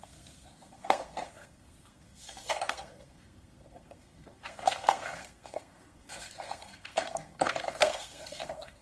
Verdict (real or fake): fake